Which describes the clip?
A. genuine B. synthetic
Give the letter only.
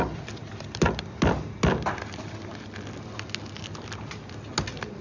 A